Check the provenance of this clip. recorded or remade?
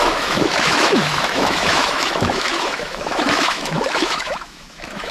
remade